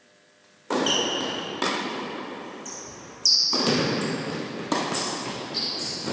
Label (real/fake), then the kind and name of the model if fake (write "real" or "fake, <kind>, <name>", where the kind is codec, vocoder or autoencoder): real